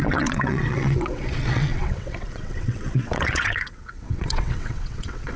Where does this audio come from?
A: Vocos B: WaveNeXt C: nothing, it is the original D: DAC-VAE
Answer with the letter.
B